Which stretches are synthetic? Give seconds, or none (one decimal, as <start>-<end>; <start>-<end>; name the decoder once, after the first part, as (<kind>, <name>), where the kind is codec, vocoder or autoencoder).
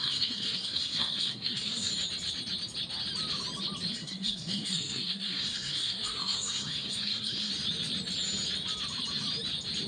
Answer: 0.0-1.9 (codec, SNAC); 3.9-7.5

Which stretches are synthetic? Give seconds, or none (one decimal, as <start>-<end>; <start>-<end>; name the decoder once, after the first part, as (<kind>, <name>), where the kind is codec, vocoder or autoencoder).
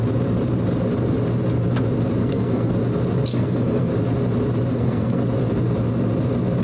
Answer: 2.2-2.7 (codec, SNAC); 3.3-3.9; 4.7-5.2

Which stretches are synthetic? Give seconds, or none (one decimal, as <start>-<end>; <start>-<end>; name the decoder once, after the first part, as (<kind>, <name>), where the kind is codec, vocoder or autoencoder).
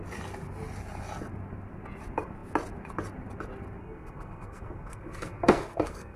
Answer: 3.8-6.2 (codec, SNAC)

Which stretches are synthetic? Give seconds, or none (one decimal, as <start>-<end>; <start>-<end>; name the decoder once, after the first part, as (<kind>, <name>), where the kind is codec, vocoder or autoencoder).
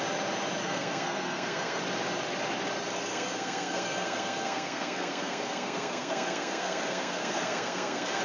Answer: 0.6-1.8 (codec, SNAC); 3.1-8.2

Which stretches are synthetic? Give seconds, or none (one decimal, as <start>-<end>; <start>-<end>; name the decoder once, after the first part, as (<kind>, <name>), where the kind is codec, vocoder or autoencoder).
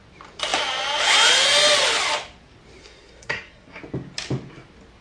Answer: 2.8-3.8 (codec, SNAC)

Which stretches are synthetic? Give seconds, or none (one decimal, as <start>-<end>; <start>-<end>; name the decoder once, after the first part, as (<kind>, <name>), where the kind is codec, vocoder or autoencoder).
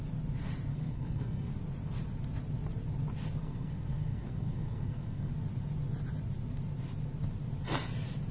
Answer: 0.7-1.5 (codec, SNAC); 3.4-5.3